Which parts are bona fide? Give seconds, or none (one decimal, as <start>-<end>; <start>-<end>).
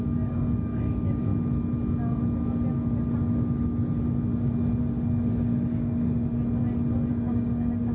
1.3-4.8; 6.3-7.1